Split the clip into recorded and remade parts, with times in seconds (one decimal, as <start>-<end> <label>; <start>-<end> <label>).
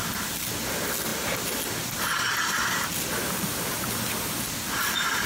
0.0-5.3 recorded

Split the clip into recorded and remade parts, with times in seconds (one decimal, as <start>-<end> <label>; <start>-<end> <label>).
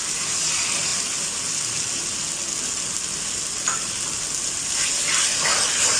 0.0-6.0 recorded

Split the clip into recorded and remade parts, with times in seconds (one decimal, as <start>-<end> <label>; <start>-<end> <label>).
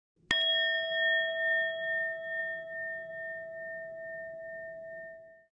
0.0-5.6 recorded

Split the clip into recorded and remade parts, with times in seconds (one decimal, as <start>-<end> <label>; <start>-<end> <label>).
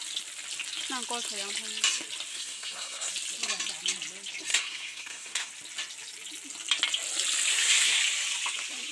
0.0-2.3 recorded; 2.3-3.1 remade; 3.1-4.5 recorded; 4.5-5.5 remade; 5.5-7.5 recorded; 7.5-8.0 remade; 8.0-8.9 recorded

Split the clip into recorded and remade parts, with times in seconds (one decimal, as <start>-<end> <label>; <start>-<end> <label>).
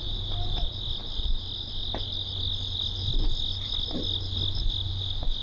0.0-5.4 recorded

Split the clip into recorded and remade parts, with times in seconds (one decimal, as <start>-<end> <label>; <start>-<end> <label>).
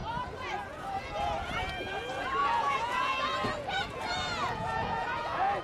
0.0-1.5 remade; 1.5-2.4 recorded; 2.4-5.6 remade